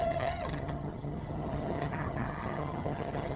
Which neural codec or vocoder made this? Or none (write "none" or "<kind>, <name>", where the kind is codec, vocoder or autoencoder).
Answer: vocoder, HiFi-GAN